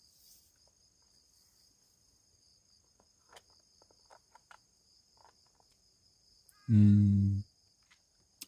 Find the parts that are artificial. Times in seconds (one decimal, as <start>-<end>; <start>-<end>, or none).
4.1-7.9